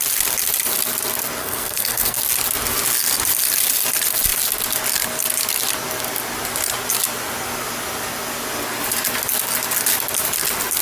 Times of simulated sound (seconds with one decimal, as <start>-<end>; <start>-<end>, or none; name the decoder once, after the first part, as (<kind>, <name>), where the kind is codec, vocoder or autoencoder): 1.4-2.2 (codec, SNAC)